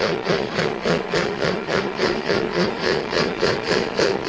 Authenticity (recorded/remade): remade